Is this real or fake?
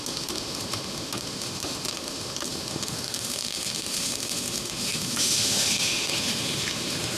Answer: fake